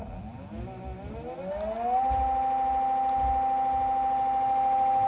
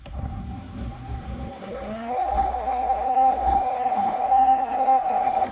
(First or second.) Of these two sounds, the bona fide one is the first